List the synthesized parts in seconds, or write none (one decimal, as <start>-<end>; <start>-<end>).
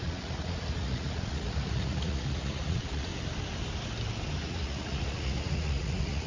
0.0-3.1; 4.4-6.3